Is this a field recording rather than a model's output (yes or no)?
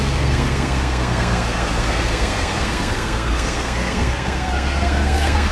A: no